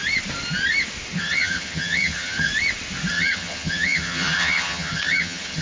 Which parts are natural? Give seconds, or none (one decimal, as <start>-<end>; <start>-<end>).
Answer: 0.0-1.2; 2.5-3.1